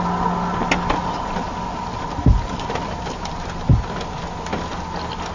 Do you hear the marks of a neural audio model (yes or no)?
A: no